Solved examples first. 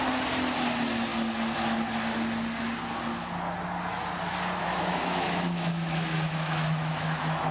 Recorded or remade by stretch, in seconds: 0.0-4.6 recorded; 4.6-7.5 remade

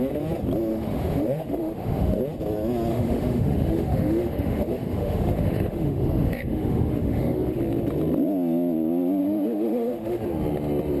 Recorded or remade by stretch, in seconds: 0.0-0.7 recorded; 0.7-2.2 remade; 2.2-2.9 recorded; 2.9-7.6 remade; 7.6-9.2 recorded; 9.2-10.2 remade; 10.2-11.0 recorded

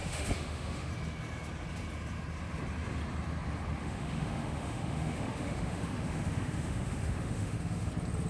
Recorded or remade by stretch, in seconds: 0.0-0.9 remade; 0.9-3.8 recorded; 3.8-7.9 remade; 7.9-8.3 recorded

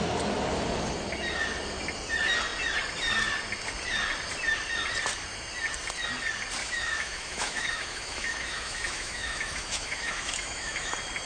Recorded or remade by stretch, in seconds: 0.0-6.6 recorded; 6.6-10.9 remade; 10.9-11.3 recorded

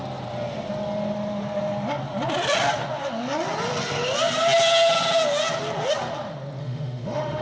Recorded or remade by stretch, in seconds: 0.0-6.6 recorded; 6.6-7.4 remade

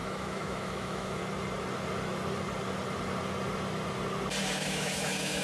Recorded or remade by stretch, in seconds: 0.0-1.2 remade; 1.2-4.4 recorded; 4.4-5.4 remade

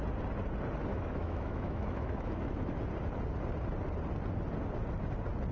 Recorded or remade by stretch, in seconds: 0.0-0.9 recorded; 0.9-2.8 remade; 2.8-5.5 recorded

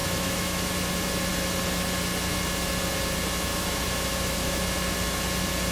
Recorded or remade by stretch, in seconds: 0.0-0.7 remade; 0.7-3.5 recorded; 3.5-4.6 remade; 4.6-5.7 recorded